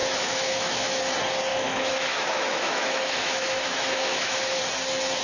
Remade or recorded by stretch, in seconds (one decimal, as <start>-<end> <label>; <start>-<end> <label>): 0.0-1.0 remade; 1.0-1.5 recorded; 1.5-4.6 remade; 4.6-5.2 recorded